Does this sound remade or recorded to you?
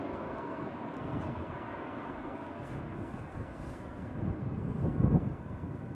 remade